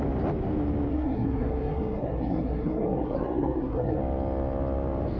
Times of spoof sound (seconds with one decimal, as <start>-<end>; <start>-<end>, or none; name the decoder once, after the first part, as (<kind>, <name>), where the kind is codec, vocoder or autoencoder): 0.9-4.0 (codec, SNAC)